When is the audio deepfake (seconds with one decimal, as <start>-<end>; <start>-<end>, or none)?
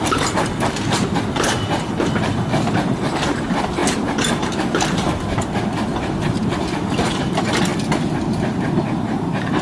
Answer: 0.0-7.7; 8.6-9.6